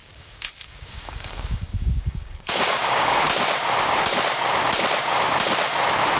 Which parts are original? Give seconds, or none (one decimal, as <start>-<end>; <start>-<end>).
3.2-6.2